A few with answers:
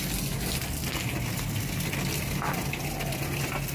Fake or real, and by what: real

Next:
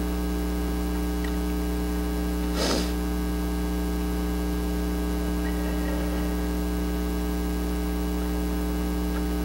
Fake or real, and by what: real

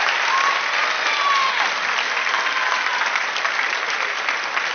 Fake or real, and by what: real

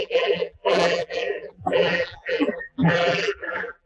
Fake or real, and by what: fake, vocoder, BigVGAN v2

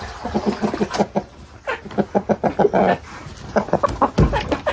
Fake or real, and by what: real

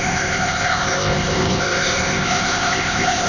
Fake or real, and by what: fake, codec, ZipCodec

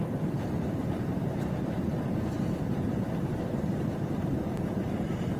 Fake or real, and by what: fake, vocoder, BigVGAN v2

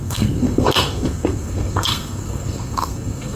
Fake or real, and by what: fake, codec, SNAC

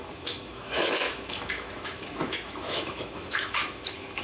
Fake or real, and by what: fake, autoencoder, DAC-VAE